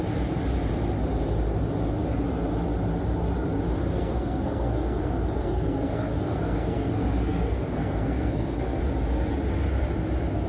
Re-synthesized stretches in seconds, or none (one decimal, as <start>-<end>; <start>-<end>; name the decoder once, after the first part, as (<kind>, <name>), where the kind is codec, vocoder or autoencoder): 3.9-8.8 (codec, SNAC)

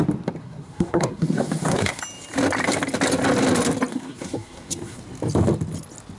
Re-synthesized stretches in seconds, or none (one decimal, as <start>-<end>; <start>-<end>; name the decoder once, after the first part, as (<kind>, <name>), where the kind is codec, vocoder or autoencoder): 0.4-2.0 (codec, SNAC); 3.9-5.0

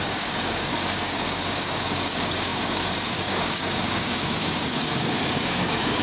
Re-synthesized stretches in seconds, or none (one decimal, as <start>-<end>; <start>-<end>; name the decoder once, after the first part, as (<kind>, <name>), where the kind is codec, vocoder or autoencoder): 0.0-6.0 (codec, DAC)

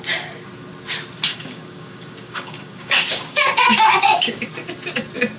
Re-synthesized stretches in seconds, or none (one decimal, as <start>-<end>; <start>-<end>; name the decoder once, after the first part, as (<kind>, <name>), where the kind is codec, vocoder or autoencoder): 1.3-4.5 (codec, DAC)

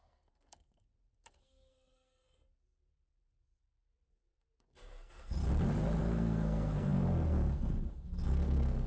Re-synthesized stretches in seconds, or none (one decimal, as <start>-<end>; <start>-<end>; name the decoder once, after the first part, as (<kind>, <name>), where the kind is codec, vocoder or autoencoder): 0.0-5.4 (codec, SNAC); 6.0-8.9

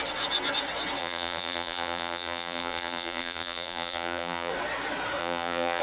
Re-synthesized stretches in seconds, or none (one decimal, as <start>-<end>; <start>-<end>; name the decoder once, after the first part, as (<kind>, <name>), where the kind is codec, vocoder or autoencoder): 1.0-4.5 (vocoder, BigVGAN v2); 5.2-5.8

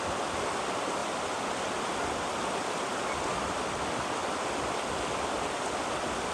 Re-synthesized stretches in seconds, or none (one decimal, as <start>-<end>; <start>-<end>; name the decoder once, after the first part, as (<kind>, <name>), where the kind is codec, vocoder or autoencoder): 1.0-3.6 (vocoder, BigVGAN v2); 4.2-5.6

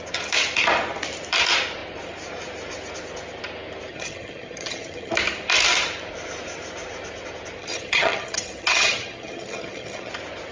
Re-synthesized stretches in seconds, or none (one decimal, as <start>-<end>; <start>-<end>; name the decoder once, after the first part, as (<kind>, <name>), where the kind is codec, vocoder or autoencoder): 3.9-5.1 (vocoder, HiFi-GAN); 7.6-10.1